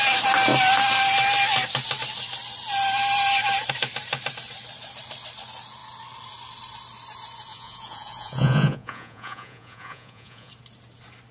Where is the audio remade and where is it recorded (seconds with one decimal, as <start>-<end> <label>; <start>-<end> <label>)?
0.0-7.5 recorded; 7.5-10.5 remade; 10.5-11.3 recorded